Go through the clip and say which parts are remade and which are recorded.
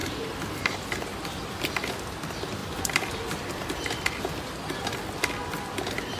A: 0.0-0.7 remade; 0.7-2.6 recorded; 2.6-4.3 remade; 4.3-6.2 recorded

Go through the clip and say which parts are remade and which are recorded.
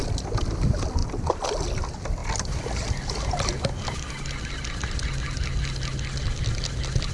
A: 0.0-7.1 recorded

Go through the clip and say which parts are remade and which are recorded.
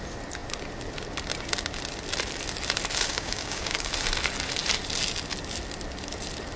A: 0.0-3.1 recorded; 3.1-3.9 remade; 3.9-6.6 recorded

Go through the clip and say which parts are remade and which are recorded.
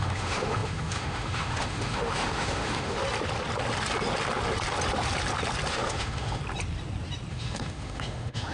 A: 0.0-3.0 remade; 3.0-5.7 recorded; 5.7-6.4 remade; 6.4-7.3 recorded; 7.3-8.5 remade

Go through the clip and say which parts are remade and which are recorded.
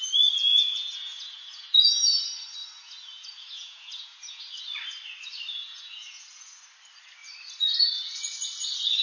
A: 0.0-0.5 recorded; 0.5-2.2 remade; 2.2-2.6 recorded; 2.6-4.4 remade; 4.4-5.6 recorded; 5.6-6.6 remade; 6.6-9.0 recorded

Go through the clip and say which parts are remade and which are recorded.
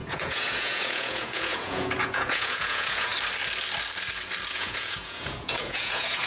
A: 0.0-3.1 remade; 3.1-4.5 recorded; 4.5-6.3 remade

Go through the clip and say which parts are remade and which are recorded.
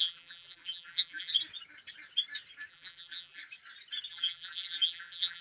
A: 0.0-1.3 remade; 1.3-2.7 recorded; 2.7-3.4 remade; 3.4-4.1 recorded; 4.1-5.4 remade